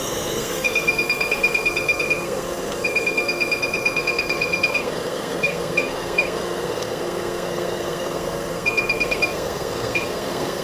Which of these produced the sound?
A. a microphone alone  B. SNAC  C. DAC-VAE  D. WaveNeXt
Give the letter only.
B